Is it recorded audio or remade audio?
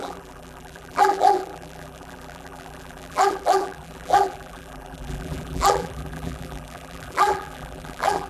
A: remade